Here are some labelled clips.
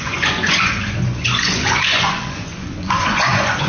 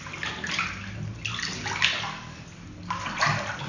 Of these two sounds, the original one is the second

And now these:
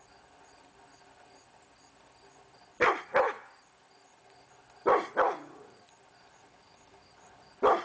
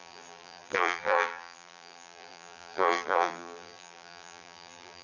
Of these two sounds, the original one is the first